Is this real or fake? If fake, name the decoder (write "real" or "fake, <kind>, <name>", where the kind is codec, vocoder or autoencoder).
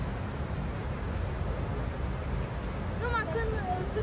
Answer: real